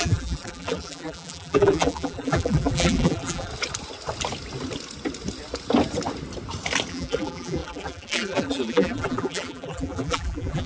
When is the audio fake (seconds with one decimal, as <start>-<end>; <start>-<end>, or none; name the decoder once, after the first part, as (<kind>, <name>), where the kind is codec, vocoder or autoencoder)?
0.0-3.5 (vocoder, BigVGAN v2); 6.9-10.7